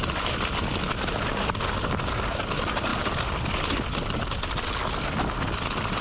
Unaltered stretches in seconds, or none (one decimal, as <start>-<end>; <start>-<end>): 0.0-6.0